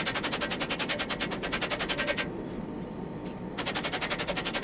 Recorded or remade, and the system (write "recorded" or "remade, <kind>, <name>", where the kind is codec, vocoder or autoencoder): recorded